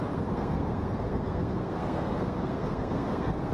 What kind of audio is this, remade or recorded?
remade